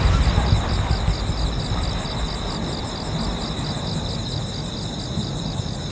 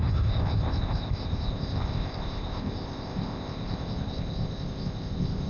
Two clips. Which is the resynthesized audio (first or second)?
second